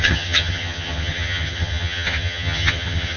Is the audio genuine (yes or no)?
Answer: no